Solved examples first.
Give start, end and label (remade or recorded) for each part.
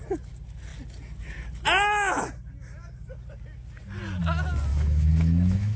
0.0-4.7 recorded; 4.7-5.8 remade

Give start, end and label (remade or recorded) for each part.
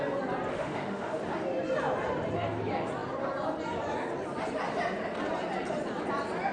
0.0-0.5 recorded; 0.5-1.2 remade; 1.2-6.5 recorded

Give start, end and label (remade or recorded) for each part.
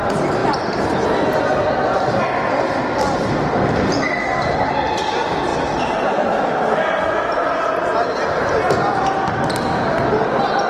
0.0-10.7 recorded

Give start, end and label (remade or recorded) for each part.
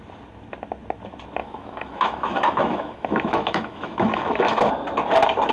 0.0-1.4 recorded; 1.4-4.7 remade; 4.7-5.5 recorded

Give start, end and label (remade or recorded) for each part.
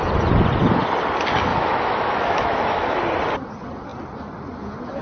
0.0-1.5 recorded; 1.5-3.0 remade; 3.0-5.0 recorded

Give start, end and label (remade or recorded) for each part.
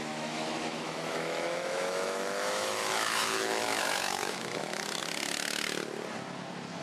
0.0-5.0 remade; 5.0-6.8 recorded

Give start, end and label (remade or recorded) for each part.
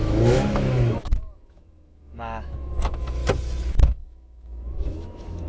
0.0-3.2 remade; 3.2-3.7 recorded; 3.7-5.5 remade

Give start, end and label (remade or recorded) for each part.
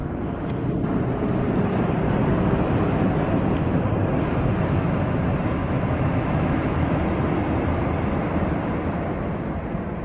0.0-5.6 recorded; 5.6-7.0 remade; 7.0-10.0 recorded